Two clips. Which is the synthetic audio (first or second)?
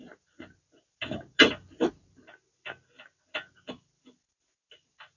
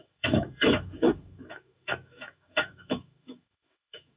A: second